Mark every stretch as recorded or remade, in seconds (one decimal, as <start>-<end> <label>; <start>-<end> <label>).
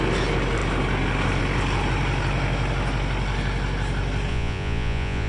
0.0-4.3 recorded; 4.3-5.3 remade